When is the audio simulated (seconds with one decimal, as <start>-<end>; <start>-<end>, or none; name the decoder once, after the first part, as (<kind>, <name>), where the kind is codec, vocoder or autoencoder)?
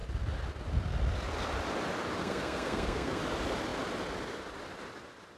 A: 2.2-3.2 (codec, SNAC)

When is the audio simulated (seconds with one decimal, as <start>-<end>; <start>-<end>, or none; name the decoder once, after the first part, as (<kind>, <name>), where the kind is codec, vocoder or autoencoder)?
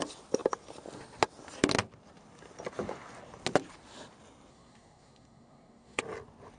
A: 4.5-6.0 (codec, SNAC)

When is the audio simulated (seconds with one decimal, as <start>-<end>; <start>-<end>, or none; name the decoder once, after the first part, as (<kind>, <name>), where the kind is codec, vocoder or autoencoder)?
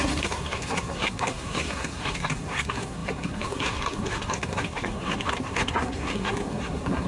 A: 0.0-7.1 (codec, SNAC)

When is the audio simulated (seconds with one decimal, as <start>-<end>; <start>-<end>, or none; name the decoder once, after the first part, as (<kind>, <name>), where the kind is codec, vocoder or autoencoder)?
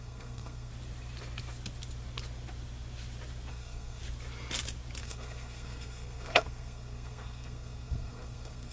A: 0.0-0.7 (codec, SNAC); 3.5-4.0; 5.0-8.7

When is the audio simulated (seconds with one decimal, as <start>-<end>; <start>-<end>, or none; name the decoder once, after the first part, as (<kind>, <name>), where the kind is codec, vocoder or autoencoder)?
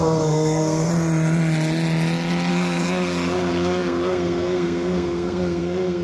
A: 0.0-0.9 (codec, SNAC); 2.5-6.0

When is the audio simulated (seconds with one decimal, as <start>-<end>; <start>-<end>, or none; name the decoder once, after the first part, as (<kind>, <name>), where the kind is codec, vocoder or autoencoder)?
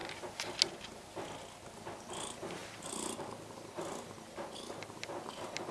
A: none